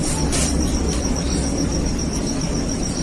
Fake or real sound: fake